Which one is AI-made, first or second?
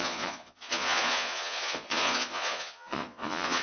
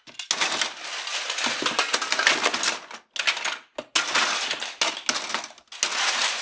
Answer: first